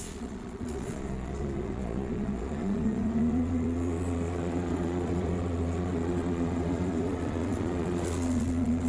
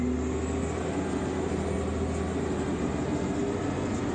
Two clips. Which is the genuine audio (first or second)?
second